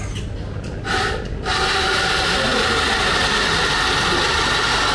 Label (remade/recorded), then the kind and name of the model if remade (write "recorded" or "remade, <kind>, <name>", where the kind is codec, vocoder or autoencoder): recorded